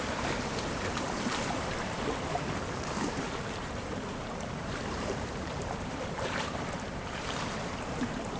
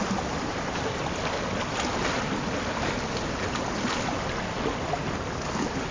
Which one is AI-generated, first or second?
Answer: first